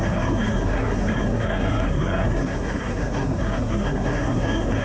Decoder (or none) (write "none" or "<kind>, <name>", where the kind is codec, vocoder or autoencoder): codec, SNAC